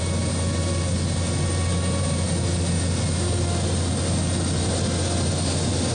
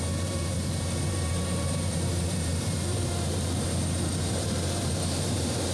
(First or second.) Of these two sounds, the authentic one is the first